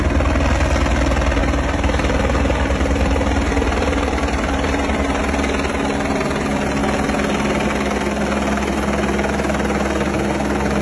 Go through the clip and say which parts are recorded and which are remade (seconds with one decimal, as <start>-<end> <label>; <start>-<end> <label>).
0.0-1.4 recorded; 1.4-5.2 remade; 5.2-10.8 recorded